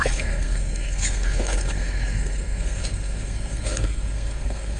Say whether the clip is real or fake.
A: fake